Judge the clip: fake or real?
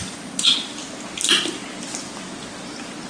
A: real